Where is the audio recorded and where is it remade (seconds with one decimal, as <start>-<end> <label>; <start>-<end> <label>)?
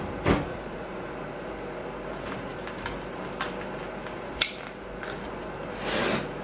0.0-0.5 recorded; 0.5-1.1 remade; 1.1-6.4 recorded